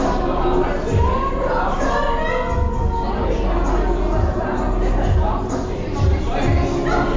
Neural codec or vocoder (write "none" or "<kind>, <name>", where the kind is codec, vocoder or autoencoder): none